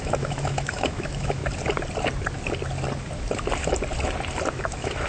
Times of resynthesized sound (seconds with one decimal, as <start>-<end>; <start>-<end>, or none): 0.0-1.4; 4.5-5.1